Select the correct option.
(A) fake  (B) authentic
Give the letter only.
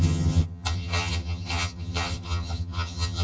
A